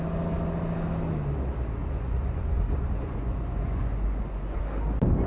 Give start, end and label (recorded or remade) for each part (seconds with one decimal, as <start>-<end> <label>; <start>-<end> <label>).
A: 0.0-1.8 recorded; 1.8-4.6 remade; 4.6-5.3 recorded